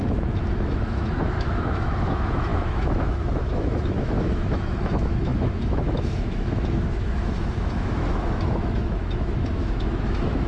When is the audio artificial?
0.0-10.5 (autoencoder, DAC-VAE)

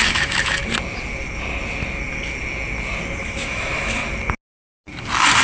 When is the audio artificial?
0.0-0.6 (autoencoder, DAC-VAE); 3.2-4.0